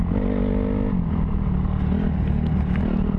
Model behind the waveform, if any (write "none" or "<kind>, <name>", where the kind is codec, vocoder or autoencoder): none